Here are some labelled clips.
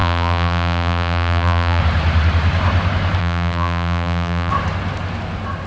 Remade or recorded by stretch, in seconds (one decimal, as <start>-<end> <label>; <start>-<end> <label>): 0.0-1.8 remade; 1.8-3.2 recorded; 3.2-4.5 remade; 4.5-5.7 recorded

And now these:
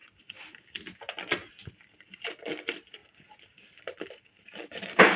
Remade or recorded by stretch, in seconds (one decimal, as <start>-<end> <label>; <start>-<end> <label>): 0.0-2.1 recorded; 2.1-5.2 remade

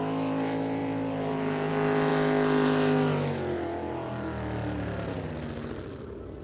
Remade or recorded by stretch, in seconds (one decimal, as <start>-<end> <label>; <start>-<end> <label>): 0.0-6.4 recorded

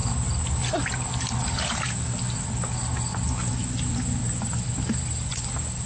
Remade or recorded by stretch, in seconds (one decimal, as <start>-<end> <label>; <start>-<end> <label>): 0.0-5.9 recorded

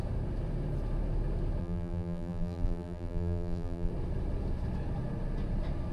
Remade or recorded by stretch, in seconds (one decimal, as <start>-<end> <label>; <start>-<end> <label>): 0.0-1.6 recorded; 1.6-3.9 remade; 3.9-5.9 recorded

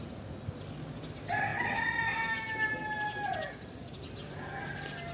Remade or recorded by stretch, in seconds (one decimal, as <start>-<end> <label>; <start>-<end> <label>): 0.0-5.1 recorded